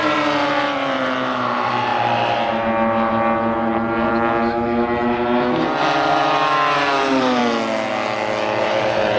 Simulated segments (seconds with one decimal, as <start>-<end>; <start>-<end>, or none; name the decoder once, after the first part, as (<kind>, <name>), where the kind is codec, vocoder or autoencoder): 0.0-1.9 (vocoder, BigVGAN v2); 6.9-7.4; 8.6-9.2